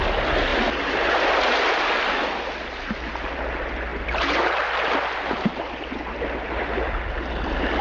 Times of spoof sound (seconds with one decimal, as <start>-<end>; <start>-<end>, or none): none